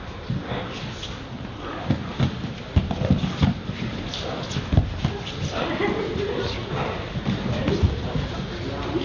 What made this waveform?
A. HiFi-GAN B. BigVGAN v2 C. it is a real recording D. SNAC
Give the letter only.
C